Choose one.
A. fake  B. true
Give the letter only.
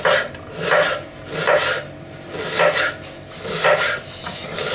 B